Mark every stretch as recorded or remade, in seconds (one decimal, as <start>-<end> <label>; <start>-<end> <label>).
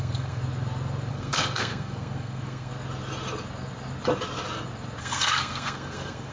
0.0-0.4 remade; 0.4-1.1 recorded; 1.1-2.7 remade; 2.7-5.0 recorded; 5.0-6.3 remade